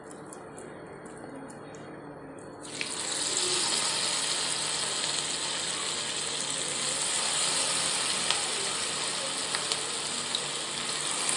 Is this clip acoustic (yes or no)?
yes